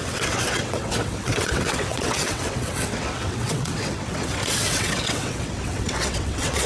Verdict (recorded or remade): remade